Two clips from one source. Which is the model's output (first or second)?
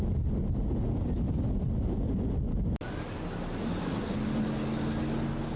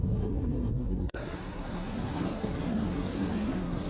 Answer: second